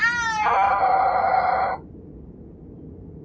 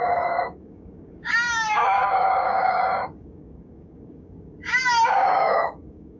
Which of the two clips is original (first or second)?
first